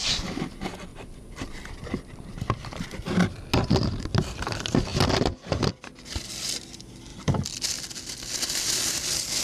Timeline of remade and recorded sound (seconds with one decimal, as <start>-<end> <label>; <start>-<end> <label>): 0.0-0.9 recorded; 0.9-2.3 remade; 2.3-4.9 recorded; 4.9-5.8 remade; 5.8-7.1 recorded; 7.1-8.1 remade; 8.1-9.4 recorded